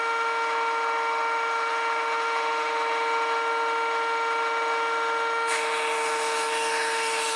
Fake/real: fake